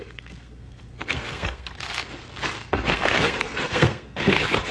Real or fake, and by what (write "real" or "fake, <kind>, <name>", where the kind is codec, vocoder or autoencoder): fake, codec, SNAC